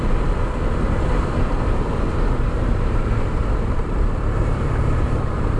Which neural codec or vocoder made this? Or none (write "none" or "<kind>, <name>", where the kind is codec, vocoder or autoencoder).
vocoder, BigVGAN v2